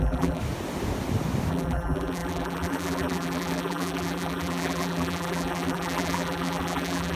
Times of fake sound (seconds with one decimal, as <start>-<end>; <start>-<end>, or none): 0.0-0.4; 1.5-7.1